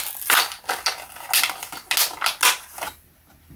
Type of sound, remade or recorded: recorded